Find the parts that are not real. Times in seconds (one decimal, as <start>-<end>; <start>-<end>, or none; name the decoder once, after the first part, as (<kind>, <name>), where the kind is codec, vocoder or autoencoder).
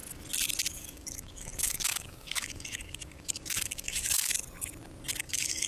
0.7-4.3 (codec, DAC); 5.2-5.7